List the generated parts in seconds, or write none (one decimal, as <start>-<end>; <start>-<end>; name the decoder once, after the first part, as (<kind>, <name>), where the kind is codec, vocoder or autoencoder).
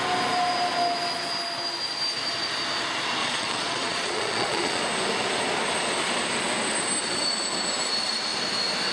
3.2-4.8 (vocoder, Vocos)